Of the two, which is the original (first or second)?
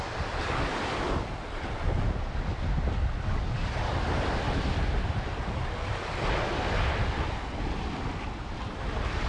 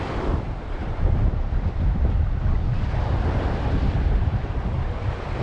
first